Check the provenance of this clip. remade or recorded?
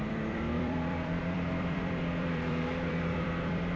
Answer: remade